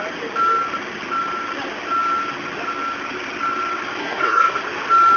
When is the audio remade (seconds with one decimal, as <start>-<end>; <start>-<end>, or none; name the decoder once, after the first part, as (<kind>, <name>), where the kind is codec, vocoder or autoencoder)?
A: 4.0-4.6 (codec, SNAC)